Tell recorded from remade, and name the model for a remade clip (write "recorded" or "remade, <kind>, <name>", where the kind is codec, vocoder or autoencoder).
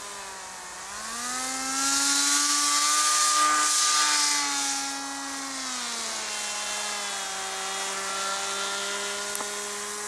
recorded